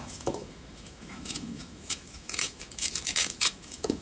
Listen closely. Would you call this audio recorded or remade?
remade